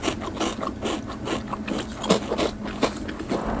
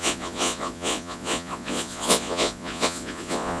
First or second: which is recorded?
first